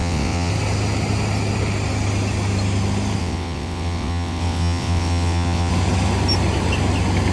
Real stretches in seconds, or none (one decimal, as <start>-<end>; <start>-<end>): 0.5-3.2; 5.7-7.3